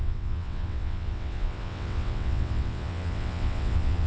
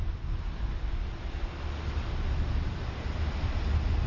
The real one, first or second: second